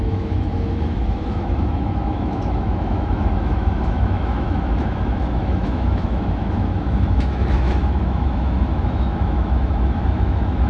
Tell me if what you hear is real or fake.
fake